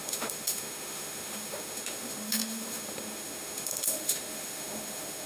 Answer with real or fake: fake